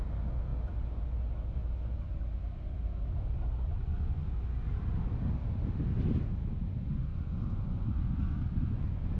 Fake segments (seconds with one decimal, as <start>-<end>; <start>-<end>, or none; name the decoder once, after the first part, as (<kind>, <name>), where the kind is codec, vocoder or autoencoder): 3.7-4.3 (vocoder, Vocos); 7.1-9.2